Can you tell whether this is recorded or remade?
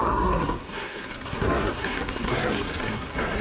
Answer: remade